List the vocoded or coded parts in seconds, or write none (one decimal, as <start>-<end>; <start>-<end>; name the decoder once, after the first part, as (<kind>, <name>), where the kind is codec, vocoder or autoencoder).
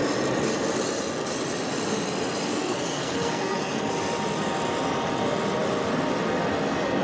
2.5-3.9 (codec, SNAC)